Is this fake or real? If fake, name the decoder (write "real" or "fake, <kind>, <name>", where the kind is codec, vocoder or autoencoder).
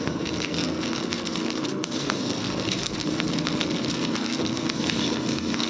fake, codec, SNAC